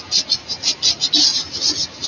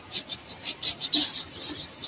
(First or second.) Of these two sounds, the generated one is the second